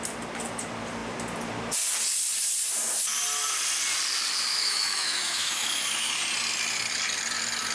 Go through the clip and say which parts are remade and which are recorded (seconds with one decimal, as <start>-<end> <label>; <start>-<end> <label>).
0.0-4.5 recorded; 4.5-6.2 remade; 6.2-7.7 recorded